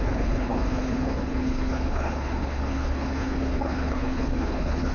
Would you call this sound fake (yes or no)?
yes